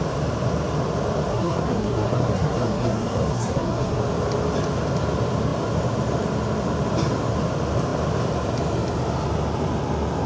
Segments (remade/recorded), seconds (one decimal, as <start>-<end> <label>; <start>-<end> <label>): 0.0-1.3 recorded; 1.3-4.0 remade; 4.0-10.3 recorded